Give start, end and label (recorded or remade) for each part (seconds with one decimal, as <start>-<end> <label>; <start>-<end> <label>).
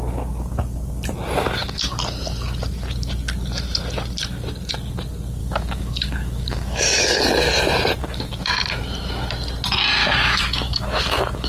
0.0-5.4 recorded; 5.4-7.2 remade; 7.2-8.0 recorded; 8.0-8.8 remade; 8.8-10.0 recorded; 10.0-11.5 remade